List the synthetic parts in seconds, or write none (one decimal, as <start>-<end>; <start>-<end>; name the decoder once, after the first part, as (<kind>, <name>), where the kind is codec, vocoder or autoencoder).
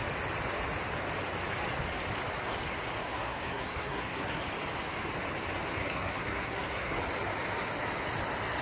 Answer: 3.0-4.4 (codec, SNAC); 5.8-7.0